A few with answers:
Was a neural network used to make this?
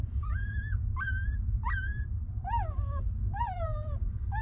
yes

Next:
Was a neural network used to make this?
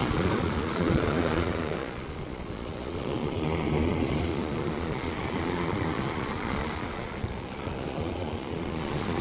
yes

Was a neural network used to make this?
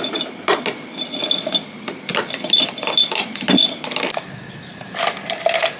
no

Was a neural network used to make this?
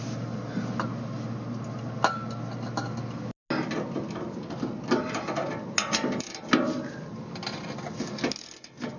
no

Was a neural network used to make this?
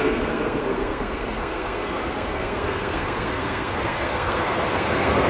yes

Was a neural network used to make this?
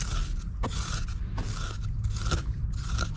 no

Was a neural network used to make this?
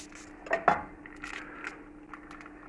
no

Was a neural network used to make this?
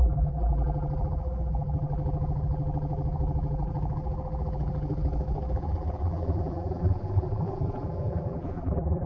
yes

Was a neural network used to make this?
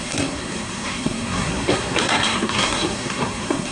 yes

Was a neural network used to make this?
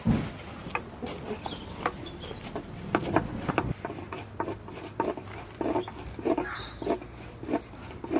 no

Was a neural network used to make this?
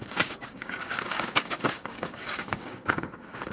yes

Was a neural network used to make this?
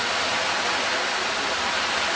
no